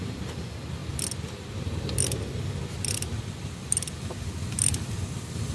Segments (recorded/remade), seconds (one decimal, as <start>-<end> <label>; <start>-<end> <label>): 0.0-5.5 recorded